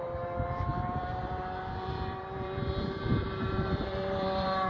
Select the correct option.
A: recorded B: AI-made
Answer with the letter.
B